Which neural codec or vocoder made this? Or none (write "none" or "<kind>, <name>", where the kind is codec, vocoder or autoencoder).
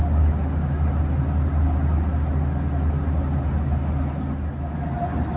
none